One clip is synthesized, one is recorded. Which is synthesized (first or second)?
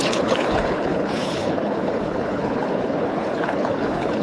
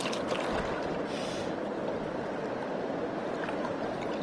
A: first